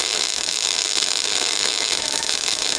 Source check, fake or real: fake